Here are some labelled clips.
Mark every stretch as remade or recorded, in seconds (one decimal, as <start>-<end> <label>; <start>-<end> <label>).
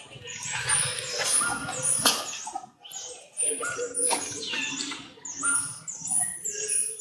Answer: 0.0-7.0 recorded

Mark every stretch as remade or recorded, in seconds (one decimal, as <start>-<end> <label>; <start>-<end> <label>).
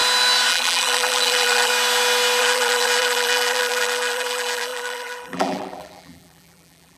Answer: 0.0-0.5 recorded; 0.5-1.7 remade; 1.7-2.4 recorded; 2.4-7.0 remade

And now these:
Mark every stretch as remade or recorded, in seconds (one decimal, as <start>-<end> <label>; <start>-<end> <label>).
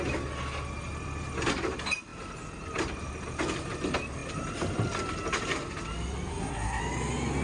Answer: 0.0-6.3 recorded; 6.3-6.8 remade; 6.8-7.4 recorded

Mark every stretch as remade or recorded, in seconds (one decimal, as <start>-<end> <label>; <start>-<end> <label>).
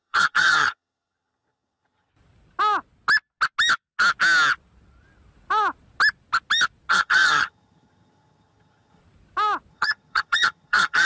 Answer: 0.0-2.1 remade; 2.1-6.9 recorded; 6.9-9.0 remade; 9.0-9.7 recorded; 9.7-11.1 remade